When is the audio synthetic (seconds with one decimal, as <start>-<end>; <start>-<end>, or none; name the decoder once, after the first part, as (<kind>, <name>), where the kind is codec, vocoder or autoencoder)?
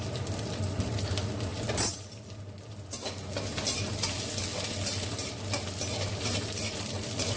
none